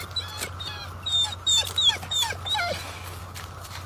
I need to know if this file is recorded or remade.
recorded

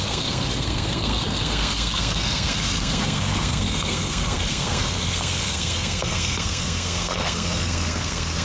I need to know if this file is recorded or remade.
remade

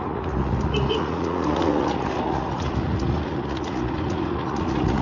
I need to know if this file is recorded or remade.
remade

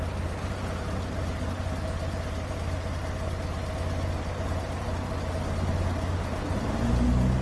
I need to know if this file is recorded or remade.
recorded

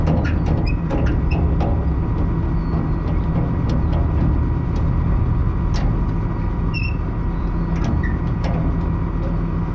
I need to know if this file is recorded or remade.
recorded